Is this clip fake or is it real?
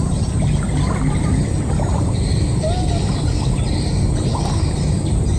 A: real